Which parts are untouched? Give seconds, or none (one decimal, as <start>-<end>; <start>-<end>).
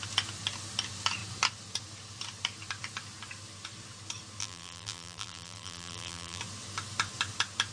0.0-4.4; 6.4-7.7